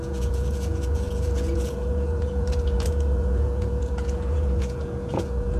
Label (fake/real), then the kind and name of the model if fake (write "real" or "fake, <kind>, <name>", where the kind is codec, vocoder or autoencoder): fake, vocoder, Vocos